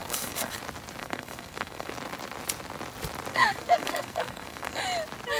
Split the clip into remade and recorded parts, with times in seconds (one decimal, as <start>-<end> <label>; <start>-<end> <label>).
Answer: 0.0-0.6 remade; 0.6-1.0 recorded; 1.0-1.9 remade; 1.9-3.3 recorded; 3.3-4.8 remade; 4.8-5.4 recorded